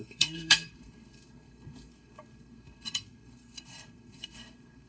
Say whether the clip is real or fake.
fake